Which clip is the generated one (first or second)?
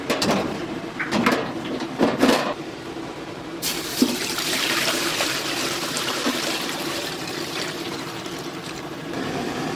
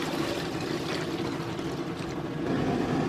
first